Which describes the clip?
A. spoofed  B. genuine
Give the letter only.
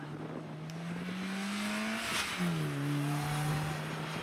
B